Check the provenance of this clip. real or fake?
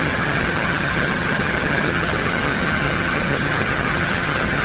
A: fake